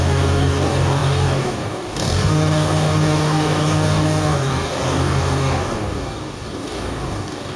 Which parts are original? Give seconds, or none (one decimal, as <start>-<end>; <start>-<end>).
none